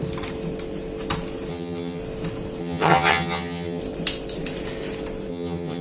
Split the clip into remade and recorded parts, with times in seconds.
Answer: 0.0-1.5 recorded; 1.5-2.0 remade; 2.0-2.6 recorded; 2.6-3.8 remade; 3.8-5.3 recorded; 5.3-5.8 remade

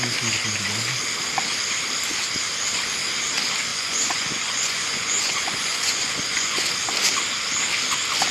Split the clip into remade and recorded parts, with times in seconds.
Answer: 0.0-3.7 recorded; 3.7-6.7 remade; 6.7-8.3 recorded

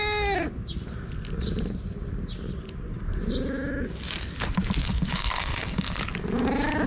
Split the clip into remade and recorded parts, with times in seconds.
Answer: 0.0-4.8 recorded; 4.8-6.0 remade; 6.0-6.9 recorded

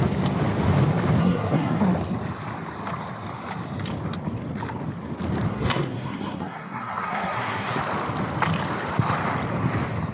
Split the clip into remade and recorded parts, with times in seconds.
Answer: 0.0-1.2 recorded; 1.2-1.8 remade; 1.8-5.5 recorded; 5.5-7.8 remade; 7.8-10.1 recorded

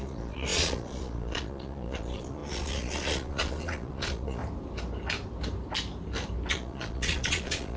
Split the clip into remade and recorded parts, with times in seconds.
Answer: 0.0-4.4 remade; 4.4-6.5 recorded; 6.5-7.8 remade

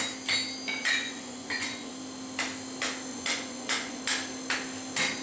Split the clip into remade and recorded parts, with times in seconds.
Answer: 0.0-0.8 recorded; 0.8-1.9 remade; 1.9-3.1 recorded; 3.1-4.0 remade; 4.0-5.2 recorded

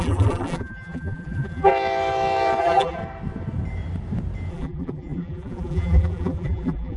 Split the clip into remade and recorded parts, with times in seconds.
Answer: 0.0-1.7 remade; 1.7-2.6 recorded; 2.6-3.0 remade; 3.0-4.5 recorded; 4.5-7.0 remade

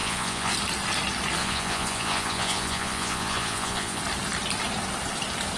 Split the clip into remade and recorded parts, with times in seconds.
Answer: 0.0-0.5 remade; 0.5-1.4 recorded; 1.4-4.0 remade; 4.0-5.6 recorded